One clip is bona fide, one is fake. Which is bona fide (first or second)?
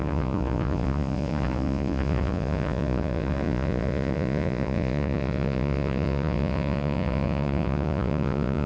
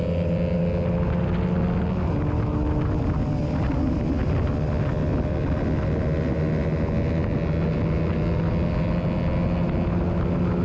second